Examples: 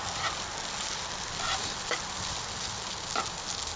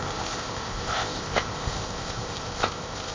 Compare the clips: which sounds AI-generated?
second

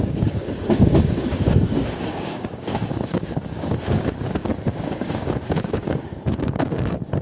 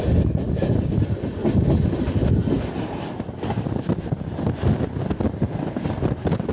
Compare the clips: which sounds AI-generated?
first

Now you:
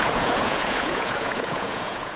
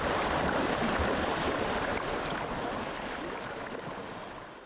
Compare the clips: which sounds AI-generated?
first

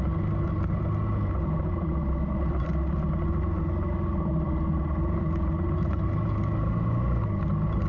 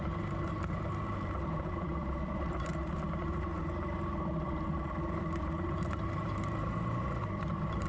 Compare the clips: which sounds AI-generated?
second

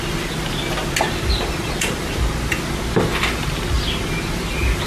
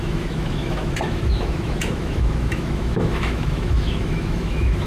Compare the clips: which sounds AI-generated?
second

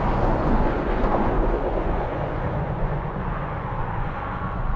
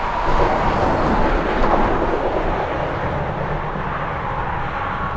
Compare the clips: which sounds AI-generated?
first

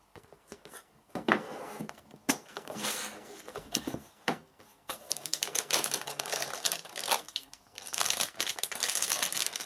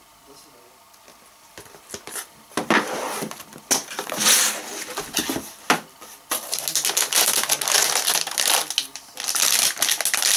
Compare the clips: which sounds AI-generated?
first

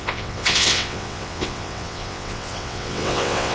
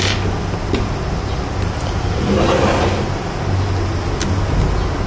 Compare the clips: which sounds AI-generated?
first